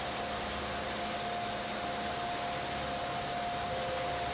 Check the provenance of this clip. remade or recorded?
recorded